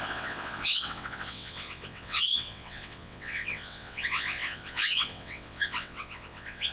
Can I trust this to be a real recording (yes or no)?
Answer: no